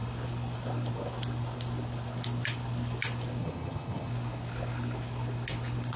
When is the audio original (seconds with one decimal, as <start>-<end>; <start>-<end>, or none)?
0.0-3.4; 4.1-6.0